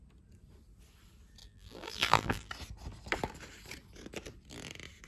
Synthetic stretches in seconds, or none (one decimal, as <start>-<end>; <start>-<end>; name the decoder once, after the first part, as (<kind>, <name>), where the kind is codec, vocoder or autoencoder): 1.4-2.5 (vocoder, BigVGAN v2)